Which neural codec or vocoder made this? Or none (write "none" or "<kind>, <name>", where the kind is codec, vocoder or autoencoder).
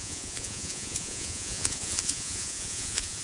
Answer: vocoder, Vocos